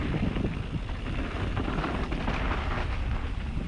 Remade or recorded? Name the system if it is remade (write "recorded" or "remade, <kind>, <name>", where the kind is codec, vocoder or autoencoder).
recorded